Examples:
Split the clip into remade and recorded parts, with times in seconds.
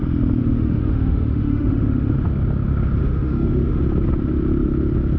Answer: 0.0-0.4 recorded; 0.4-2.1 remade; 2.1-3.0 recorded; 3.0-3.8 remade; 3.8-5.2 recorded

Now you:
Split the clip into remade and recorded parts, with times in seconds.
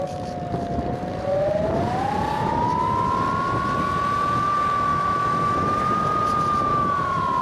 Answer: 0.0-4.9 recorded; 4.9-5.8 remade; 5.8-6.7 recorded; 6.7-7.4 remade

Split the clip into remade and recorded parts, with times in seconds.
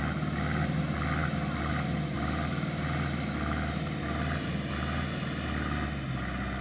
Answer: 0.0-6.6 recorded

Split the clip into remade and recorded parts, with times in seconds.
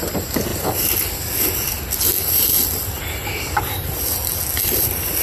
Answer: 0.0-5.2 recorded